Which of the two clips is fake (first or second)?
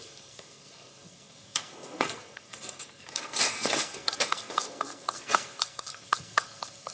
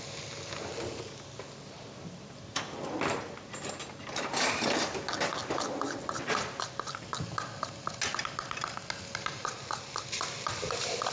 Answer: first